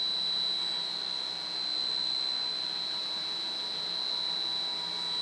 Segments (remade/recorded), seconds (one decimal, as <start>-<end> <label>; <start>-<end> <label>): 0.0-5.2 recorded